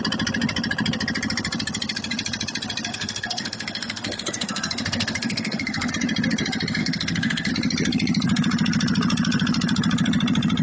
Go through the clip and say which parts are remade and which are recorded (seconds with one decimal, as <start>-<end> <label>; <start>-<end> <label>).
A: 0.0-2.9 recorded; 2.9-5.9 remade; 5.9-6.8 recorded; 6.8-7.5 remade; 7.5-10.6 recorded